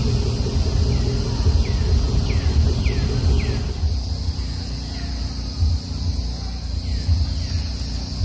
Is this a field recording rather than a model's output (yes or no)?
yes